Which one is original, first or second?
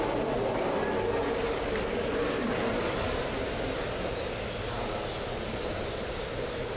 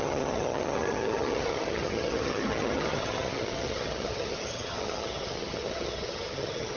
first